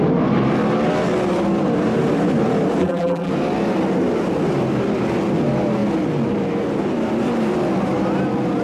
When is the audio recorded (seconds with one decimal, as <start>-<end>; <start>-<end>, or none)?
0.0-2.8; 3.3-8.6